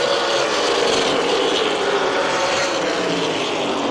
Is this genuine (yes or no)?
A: yes